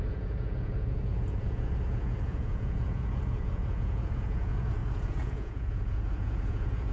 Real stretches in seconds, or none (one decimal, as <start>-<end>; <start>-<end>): none